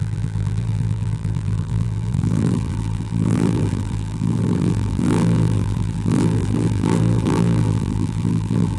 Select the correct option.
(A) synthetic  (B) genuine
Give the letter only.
A